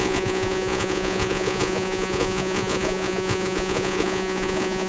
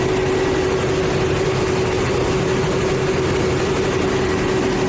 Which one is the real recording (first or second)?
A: second